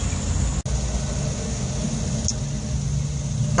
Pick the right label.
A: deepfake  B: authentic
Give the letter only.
B